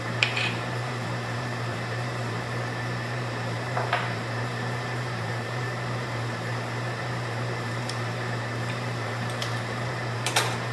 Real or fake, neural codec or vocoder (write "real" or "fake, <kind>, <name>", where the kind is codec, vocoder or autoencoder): fake, vocoder, BigVGAN v2